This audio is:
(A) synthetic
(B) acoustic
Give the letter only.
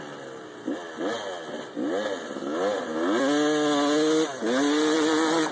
B